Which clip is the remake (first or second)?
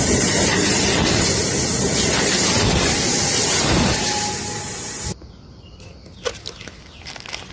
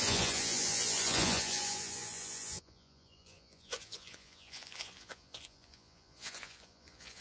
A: second